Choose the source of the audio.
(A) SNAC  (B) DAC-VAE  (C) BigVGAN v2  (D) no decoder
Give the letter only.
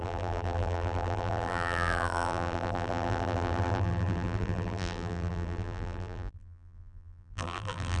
C